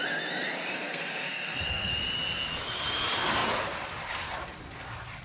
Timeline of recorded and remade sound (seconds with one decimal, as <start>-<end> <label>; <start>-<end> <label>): 0.0-0.7 recorded; 0.7-1.9 remade; 1.9-5.2 recorded